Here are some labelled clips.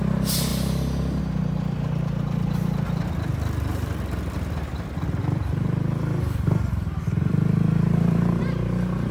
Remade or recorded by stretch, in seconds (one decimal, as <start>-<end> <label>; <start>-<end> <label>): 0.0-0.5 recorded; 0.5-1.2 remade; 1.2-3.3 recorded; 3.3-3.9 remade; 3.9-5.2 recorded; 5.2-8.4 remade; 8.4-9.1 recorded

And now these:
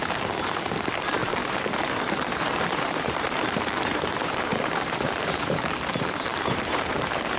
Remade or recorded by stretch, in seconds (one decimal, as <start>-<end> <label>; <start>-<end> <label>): 0.0-1.2 recorded; 1.2-5.6 remade; 5.6-6.3 recorded; 6.3-7.4 remade

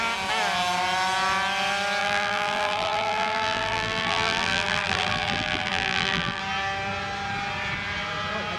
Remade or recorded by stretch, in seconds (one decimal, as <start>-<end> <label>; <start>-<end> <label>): 0.0-2.0 recorded; 2.0-6.4 remade; 6.4-8.6 recorded

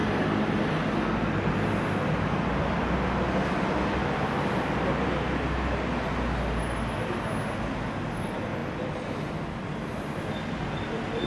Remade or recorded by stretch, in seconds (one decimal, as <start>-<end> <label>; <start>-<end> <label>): 0.0-11.3 recorded

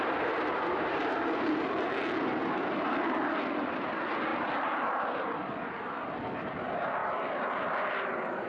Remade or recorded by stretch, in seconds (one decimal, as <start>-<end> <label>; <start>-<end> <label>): 0.0-1.0 recorded; 1.0-1.9 remade; 1.9-8.5 recorded

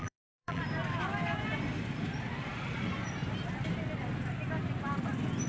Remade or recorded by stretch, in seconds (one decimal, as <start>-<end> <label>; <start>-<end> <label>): 0.0-0.6 remade; 0.6-5.5 recorded